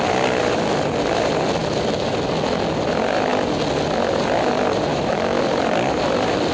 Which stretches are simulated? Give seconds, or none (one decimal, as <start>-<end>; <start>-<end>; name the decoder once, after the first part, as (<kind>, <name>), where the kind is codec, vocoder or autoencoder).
4.9-5.4 (autoencoder, DAC-VAE)